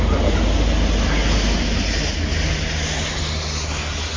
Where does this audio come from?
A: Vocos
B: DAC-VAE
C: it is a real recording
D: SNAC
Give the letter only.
C